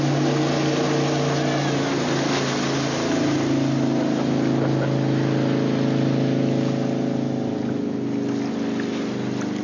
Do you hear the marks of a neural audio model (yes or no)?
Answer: no